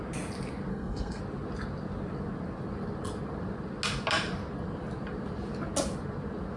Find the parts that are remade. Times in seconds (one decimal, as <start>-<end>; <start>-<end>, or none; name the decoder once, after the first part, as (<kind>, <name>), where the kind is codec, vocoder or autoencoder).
0.7-1.2 (codec, SNAC)